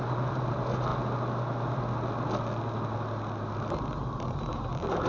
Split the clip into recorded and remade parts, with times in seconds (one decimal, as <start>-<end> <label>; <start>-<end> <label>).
0.0-0.9 remade; 0.9-4.0 recorded; 4.0-5.1 remade